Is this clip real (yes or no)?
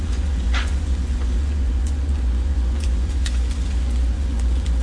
no